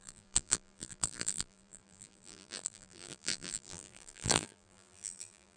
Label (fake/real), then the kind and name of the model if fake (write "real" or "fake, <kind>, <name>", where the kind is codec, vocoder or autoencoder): fake, vocoder, BigVGAN v2